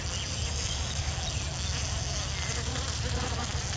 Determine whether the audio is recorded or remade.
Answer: recorded